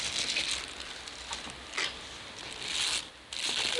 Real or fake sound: real